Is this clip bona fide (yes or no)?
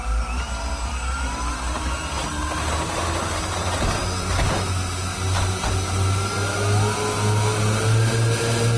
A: yes